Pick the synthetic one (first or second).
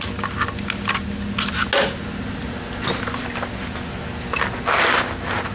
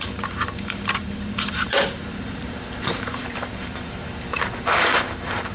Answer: second